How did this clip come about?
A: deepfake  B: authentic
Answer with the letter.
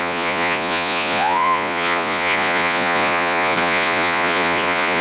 A